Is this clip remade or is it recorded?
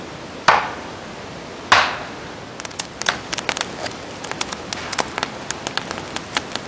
recorded